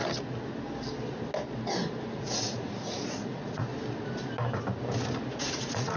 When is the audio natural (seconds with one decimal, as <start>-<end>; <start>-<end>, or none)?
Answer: 0.0-2.1; 3.7-5.3

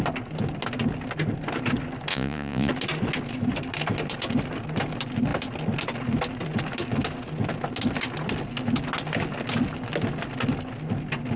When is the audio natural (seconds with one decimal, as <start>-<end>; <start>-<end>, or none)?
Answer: 0.0-2.1; 2.7-11.4